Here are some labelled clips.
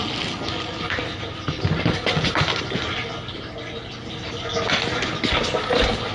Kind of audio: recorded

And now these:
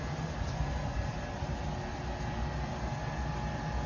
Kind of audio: recorded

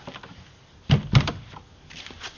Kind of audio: recorded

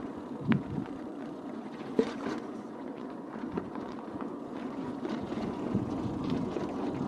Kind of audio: remade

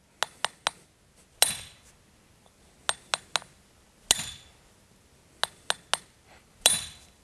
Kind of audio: recorded